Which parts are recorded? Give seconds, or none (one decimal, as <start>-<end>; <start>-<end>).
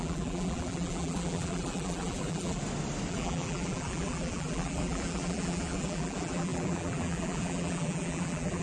2.6-3.1